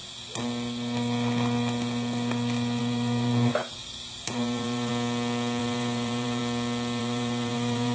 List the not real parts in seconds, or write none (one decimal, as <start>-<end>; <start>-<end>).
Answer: 2.8-4.9; 5.6-6.4; 7.0-7.9